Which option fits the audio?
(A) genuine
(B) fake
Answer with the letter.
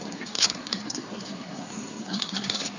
B